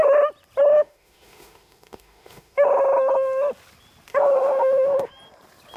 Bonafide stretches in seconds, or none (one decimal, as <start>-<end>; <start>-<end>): 0.0-0.7; 2.7-4.1; 5.1-5.8